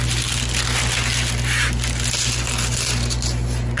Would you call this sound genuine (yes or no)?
yes